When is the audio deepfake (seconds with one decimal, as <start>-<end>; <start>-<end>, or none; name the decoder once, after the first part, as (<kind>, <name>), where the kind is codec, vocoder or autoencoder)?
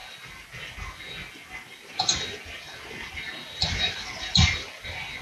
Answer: none